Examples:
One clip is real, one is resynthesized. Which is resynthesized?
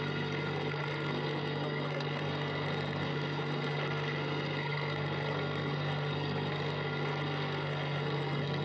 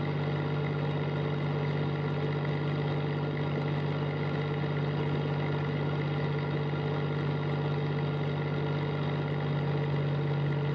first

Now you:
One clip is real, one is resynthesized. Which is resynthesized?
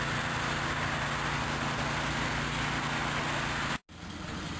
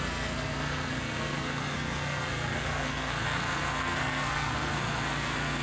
second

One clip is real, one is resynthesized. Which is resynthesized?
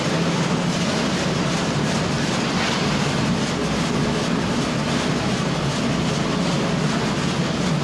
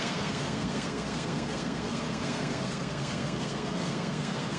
second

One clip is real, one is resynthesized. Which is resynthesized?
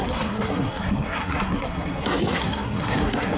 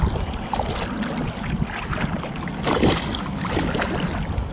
first